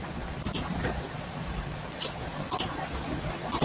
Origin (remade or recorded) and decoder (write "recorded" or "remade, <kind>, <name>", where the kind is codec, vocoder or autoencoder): remade, vocoder, Vocos